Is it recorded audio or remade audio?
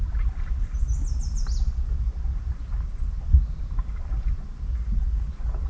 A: recorded